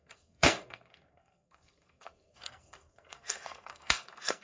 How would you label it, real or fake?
fake